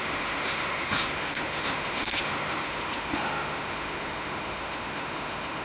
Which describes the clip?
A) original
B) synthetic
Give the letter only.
B